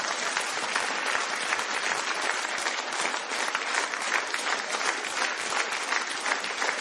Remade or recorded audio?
recorded